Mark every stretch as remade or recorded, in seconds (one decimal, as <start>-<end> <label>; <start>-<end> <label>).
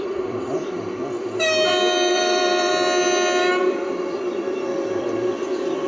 0.0-1.0 remade; 1.0-2.1 recorded; 2.1-2.7 remade; 2.7-3.6 recorded; 3.6-5.9 remade